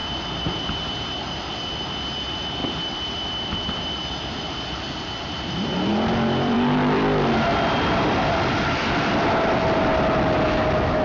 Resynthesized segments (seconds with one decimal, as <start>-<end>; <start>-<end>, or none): 0.0-11.0